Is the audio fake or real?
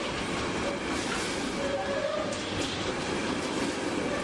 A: real